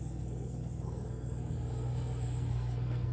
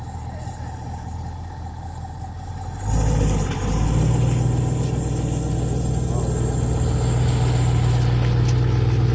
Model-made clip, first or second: first